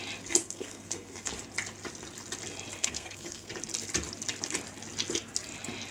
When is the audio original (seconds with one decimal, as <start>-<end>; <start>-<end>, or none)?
0.0-0.4; 1.3-2.8; 3.5-5.9